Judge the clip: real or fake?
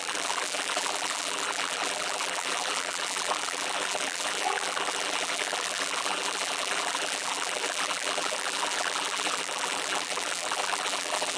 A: fake